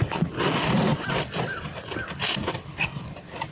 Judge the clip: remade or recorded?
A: recorded